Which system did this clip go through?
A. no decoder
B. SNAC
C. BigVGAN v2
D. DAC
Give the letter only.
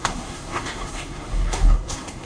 B